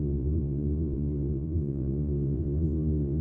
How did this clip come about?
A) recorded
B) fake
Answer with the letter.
B